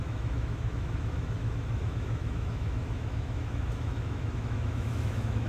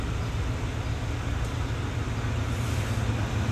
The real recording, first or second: second